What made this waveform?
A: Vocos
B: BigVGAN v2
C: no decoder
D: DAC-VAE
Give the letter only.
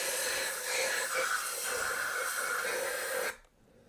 C